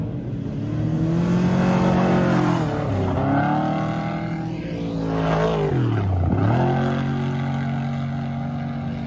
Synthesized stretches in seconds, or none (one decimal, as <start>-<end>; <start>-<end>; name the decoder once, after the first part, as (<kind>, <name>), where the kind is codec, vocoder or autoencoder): none